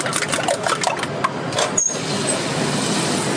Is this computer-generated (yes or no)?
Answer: no